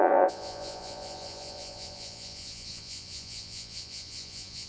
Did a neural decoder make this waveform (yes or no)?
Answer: yes